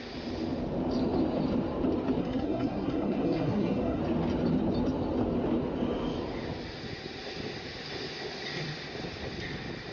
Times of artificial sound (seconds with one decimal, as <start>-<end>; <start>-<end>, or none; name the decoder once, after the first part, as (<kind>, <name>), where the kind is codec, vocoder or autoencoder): 2.2-4.0 (codec, SNAC)